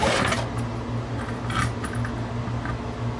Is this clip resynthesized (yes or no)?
no